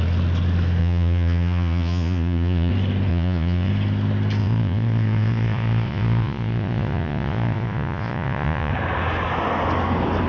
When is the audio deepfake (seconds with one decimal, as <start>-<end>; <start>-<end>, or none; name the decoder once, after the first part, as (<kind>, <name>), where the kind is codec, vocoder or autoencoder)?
0.8-2.7 (vocoder, Vocos); 3.1-3.7; 4.4-8.7